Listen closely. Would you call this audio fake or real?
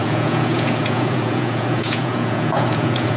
fake